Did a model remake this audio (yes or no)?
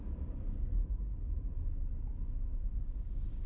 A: no